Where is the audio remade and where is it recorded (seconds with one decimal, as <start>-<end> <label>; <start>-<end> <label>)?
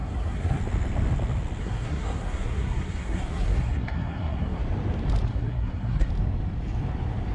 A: 0.0-0.6 remade; 0.6-1.6 recorded; 1.6-4.6 remade; 4.6-5.3 recorded; 5.3-6.1 remade; 6.1-7.3 recorded